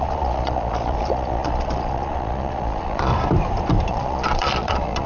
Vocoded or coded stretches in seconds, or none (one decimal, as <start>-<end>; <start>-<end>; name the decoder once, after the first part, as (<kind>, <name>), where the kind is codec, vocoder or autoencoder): 0.0-3.1 (vocoder, Vocos); 3.9-5.1